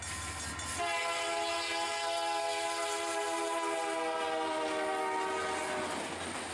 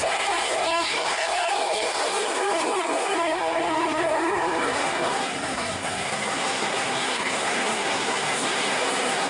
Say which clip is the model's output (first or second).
second